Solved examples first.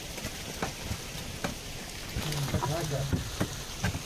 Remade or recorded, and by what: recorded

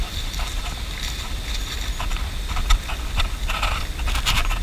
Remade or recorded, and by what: recorded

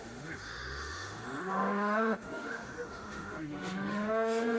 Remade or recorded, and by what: remade, autoencoder, DAC-VAE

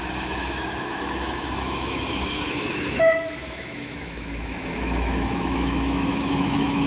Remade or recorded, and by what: remade, autoencoder, DAC-VAE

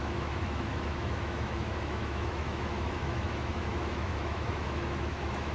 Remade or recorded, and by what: remade, autoencoder, DAC-VAE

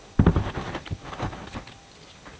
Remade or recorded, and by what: recorded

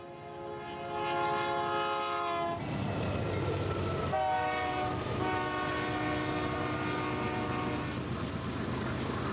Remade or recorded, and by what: recorded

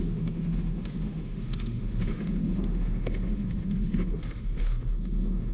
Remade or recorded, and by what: remade, autoencoder, DAC-VAE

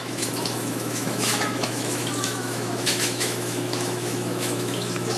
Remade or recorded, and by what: remade, autoencoder, DAC-VAE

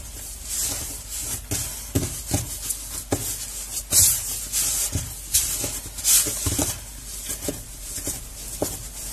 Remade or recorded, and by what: recorded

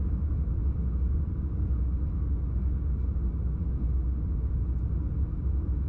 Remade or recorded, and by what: recorded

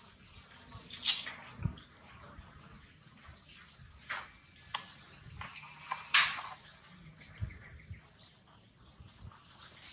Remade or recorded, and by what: recorded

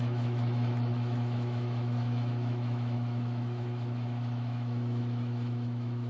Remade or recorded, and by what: remade, autoencoder, DAC-VAE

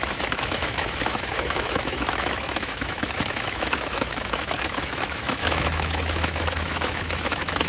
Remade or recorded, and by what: remade, autoencoder, DAC-VAE